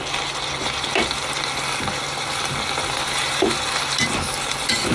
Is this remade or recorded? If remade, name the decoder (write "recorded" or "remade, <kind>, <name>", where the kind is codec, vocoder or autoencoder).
recorded